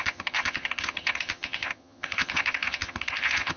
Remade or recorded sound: remade